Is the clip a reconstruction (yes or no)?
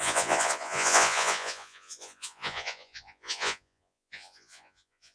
yes